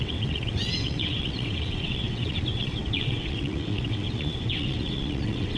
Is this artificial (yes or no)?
yes